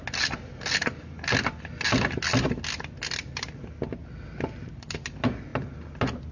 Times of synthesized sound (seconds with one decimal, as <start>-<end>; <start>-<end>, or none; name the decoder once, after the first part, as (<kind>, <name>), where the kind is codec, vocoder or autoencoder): none